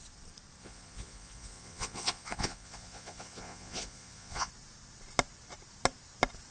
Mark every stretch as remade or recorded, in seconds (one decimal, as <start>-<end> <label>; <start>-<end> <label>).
0.0-0.6 recorded; 0.6-4.5 remade; 4.5-6.5 recorded